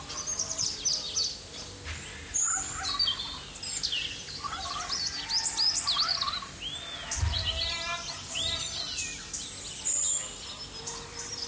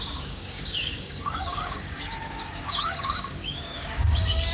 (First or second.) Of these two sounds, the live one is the first